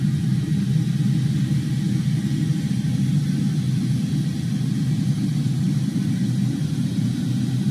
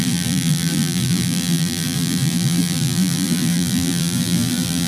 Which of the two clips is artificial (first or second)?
second